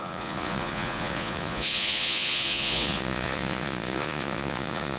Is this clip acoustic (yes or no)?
no